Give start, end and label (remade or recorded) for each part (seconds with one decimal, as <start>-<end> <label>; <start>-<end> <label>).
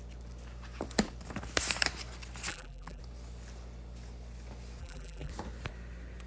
0.0-2.5 recorded; 2.5-3.0 remade; 3.0-4.8 recorded; 4.8-5.3 remade; 5.3-6.3 recorded